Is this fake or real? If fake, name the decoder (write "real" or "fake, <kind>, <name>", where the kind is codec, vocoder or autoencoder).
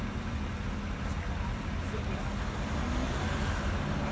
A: real